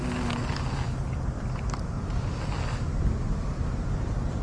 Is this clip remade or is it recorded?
recorded